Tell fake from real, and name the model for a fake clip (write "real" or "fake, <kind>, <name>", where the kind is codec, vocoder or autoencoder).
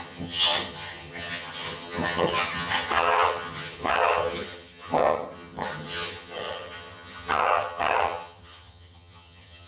fake, vocoder, HiFi-GAN